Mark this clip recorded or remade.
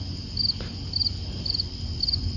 recorded